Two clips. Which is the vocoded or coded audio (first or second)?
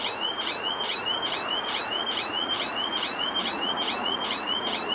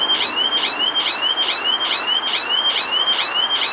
first